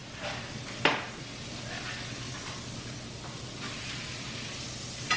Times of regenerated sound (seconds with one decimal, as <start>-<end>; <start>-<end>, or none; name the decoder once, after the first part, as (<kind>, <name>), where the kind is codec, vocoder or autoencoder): none